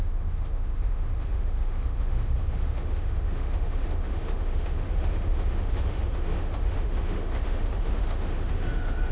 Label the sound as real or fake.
fake